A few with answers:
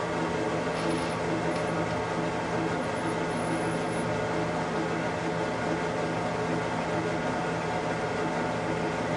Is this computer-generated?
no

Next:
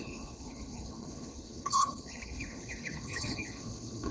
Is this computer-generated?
yes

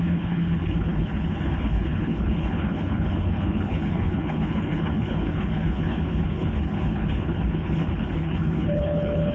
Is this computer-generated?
yes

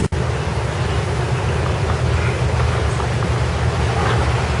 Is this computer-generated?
no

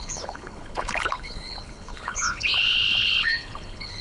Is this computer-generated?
yes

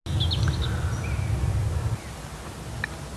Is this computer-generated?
no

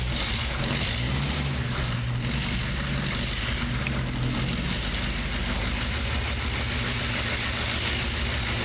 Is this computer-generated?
no